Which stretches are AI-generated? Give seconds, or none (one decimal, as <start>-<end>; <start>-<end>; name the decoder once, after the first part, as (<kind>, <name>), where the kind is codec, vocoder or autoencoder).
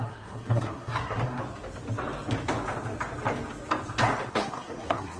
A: 0.0-1.4 (codec, SNAC); 4.3-5.2